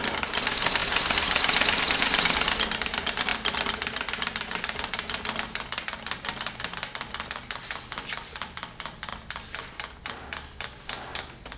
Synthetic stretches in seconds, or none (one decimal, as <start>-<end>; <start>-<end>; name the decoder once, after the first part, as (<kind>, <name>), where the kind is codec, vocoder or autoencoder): none

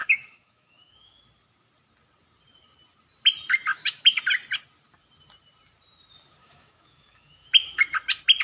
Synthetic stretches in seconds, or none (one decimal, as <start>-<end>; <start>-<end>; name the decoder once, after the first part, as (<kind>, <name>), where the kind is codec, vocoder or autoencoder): 0.0-1.2 (autoencoder, DAC-VAE); 3.7-4.2; 6.4-7.8

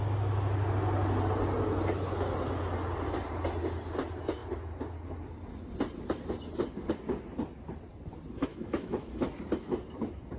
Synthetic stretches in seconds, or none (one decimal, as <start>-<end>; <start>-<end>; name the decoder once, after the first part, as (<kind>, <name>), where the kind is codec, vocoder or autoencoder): 8.5-9.1 (autoencoder, DAC-VAE)

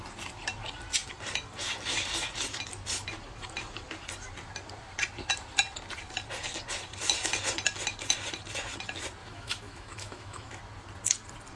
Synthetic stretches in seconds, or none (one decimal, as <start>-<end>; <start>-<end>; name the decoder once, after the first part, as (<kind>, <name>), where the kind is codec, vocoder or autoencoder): 9.2-10.6 (autoencoder, DAC-VAE)

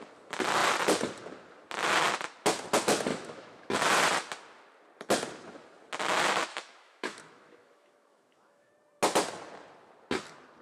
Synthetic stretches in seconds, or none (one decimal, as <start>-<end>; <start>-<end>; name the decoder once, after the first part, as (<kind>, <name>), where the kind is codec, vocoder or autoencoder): 3.1-3.7 (autoencoder, DAC-VAE); 6.5-8.7

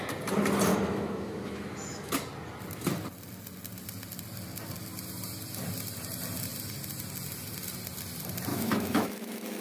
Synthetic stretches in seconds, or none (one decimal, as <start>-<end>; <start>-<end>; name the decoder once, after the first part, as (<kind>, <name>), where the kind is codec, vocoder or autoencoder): 0.7-2.1 (autoencoder, DAC-VAE); 8.5-9.6

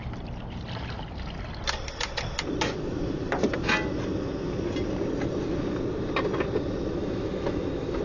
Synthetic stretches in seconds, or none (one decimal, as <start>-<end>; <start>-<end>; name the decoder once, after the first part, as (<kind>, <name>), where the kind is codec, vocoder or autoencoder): 7.0-8.0 (autoencoder, DAC-VAE)

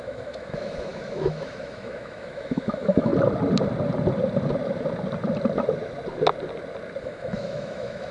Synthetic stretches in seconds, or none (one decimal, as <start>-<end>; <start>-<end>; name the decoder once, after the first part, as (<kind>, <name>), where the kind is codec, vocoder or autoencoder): 0.0-3.1 (autoencoder, DAC-VAE); 7.0-8.1